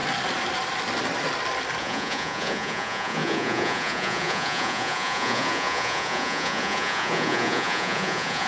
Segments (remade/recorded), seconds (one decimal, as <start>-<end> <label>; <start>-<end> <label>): 0.0-1.8 recorded; 1.8-8.5 remade